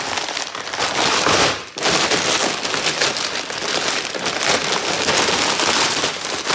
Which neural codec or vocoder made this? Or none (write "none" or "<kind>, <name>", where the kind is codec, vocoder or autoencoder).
none